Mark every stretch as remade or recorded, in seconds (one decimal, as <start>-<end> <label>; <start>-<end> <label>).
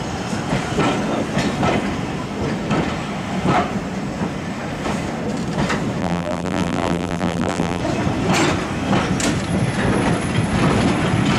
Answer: 0.0-6.0 recorded; 6.0-7.8 remade; 7.8-11.4 recorded